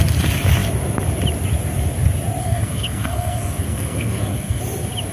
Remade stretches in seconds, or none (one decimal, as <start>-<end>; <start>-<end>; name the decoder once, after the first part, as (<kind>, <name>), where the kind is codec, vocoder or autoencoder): 2.4-4.6 (codec, SNAC)